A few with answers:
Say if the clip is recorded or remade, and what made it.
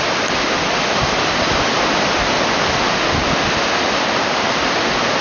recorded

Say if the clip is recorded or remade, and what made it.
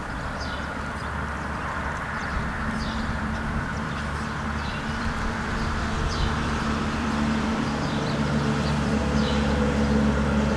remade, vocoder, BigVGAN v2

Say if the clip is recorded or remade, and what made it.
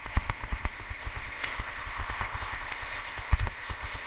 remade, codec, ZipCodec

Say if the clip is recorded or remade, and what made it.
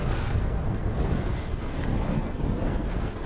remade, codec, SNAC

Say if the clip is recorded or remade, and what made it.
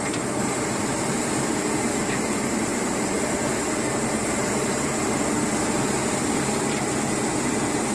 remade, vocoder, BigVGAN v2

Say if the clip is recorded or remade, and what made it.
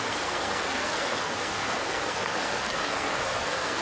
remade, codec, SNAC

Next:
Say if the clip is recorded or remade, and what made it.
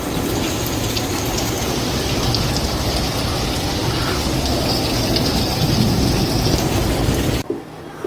recorded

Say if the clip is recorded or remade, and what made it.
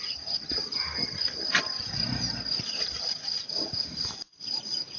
recorded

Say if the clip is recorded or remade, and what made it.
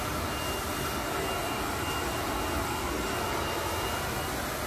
recorded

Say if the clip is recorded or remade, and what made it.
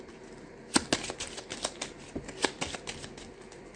recorded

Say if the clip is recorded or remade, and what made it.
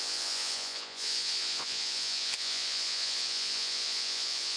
remade, vocoder, Vocos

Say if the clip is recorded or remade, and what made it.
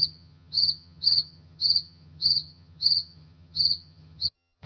remade, vocoder, HiFi-GAN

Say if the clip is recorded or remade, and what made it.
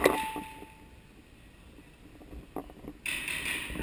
recorded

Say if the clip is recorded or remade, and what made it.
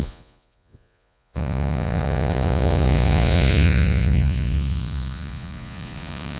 remade, vocoder, Vocos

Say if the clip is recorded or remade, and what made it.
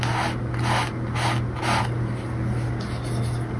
recorded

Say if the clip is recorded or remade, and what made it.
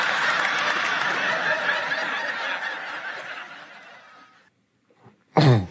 recorded